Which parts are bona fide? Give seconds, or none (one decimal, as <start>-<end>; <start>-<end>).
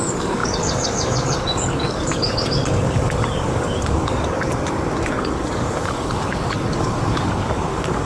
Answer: none